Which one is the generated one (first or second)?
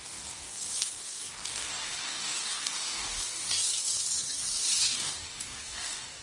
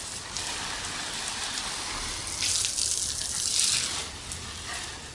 first